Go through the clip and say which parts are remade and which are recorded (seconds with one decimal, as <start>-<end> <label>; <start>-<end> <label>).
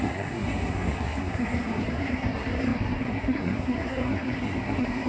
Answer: 0.0-5.1 remade